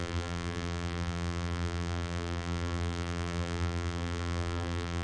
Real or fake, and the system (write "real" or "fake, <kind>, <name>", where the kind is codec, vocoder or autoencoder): fake, vocoder, BigVGAN v2